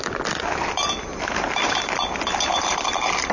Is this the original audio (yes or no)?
yes